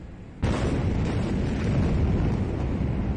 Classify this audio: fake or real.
real